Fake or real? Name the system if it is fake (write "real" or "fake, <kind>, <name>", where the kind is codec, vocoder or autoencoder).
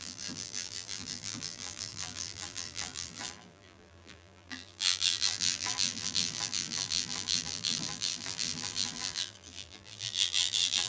fake, vocoder, BigVGAN v2